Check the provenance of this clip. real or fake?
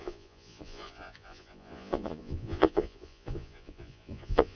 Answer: fake